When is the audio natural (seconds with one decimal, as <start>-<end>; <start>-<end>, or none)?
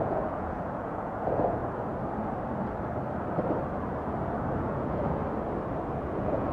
1.6-4.6; 5.2-5.9